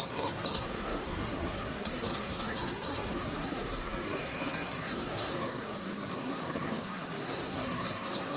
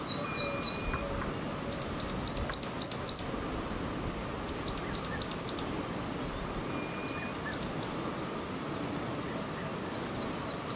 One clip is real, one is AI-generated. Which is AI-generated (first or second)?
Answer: first